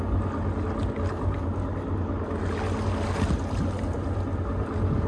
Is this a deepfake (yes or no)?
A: no